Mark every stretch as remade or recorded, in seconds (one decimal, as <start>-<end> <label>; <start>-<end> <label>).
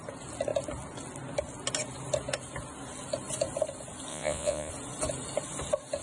0.0-4.1 recorded; 4.1-4.7 remade; 4.7-6.0 recorded